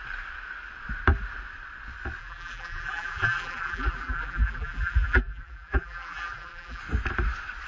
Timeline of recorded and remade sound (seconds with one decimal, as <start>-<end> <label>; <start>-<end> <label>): 0.0-2.2 recorded; 2.2-6.8 remade; 6.8-7.7 recorded